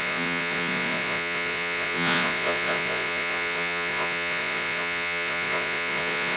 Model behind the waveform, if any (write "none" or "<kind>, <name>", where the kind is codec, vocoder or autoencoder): vocoder, Vocos